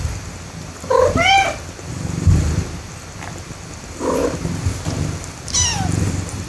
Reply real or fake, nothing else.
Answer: real